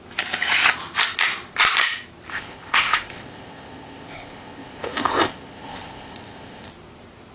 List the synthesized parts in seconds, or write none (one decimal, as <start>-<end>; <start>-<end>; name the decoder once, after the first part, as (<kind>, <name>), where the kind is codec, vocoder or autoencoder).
2.3-6.7 (codec, ZipCodec)